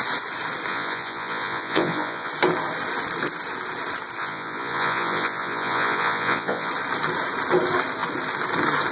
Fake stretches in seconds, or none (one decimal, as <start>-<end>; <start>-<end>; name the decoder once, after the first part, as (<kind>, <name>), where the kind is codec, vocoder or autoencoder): 0.7-2.3 (vocoder, Vocos); 4.2-6.7